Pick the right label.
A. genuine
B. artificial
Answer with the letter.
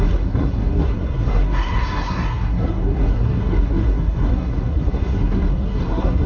B